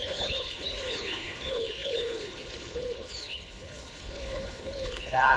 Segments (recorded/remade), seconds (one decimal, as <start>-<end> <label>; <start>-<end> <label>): 0.0-5.4 remade